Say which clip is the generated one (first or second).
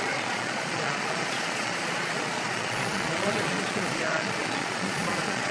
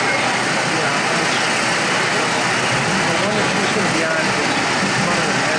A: first